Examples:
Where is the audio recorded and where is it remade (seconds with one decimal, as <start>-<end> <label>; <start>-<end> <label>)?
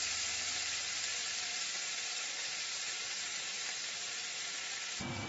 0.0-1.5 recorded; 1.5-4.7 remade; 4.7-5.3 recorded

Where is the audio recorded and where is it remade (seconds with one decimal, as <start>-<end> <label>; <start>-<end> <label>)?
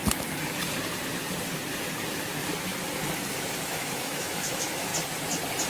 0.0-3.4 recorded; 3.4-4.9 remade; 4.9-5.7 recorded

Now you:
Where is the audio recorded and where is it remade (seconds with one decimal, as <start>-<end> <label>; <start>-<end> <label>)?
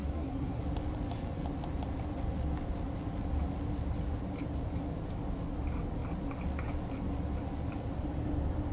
0.0-0.6 remade; 0.6-8.7 recorded